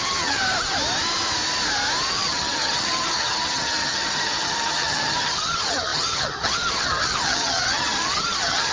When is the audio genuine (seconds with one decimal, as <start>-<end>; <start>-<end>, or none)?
0.4-2.1